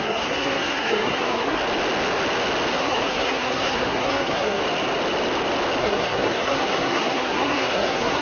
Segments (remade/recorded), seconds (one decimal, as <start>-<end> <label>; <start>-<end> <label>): 0.0-1.6 remade; 1.6-2.7 recorded; 2.7-4.6 remade; 4.6-5.8 recorded; 5.8-8.2 remade